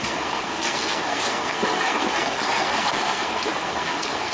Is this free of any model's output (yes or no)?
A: no